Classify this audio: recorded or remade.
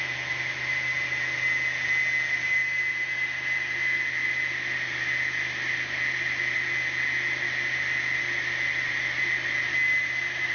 recorded